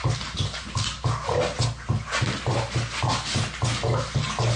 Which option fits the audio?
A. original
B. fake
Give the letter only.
A